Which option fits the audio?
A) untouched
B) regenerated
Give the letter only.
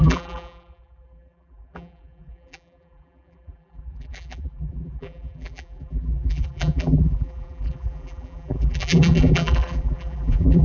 B